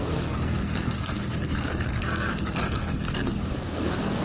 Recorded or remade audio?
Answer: remade